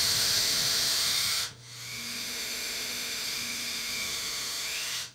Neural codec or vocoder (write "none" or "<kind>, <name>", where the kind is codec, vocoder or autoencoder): autoencoder, DAC-VAE